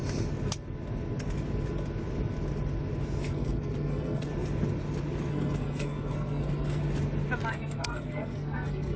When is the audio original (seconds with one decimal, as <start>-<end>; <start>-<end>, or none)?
0.0-3.3; 4.3-5.3; 6.8-7.5